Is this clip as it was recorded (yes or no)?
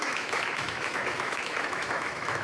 no